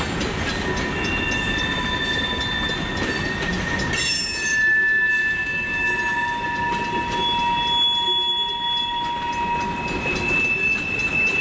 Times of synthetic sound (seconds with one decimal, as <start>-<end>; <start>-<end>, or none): 5.2-5.9